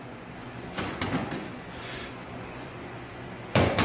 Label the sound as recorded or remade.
remade